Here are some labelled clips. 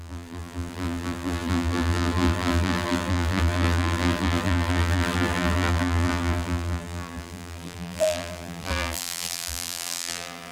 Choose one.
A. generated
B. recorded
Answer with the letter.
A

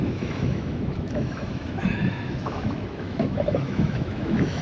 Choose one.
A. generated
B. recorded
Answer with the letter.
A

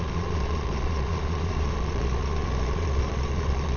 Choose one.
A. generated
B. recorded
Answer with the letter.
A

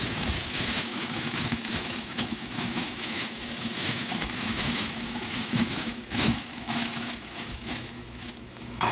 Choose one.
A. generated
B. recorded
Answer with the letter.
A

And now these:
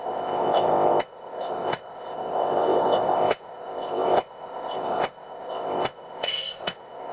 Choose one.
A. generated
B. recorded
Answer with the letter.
A